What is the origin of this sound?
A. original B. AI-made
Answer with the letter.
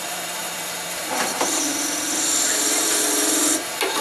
B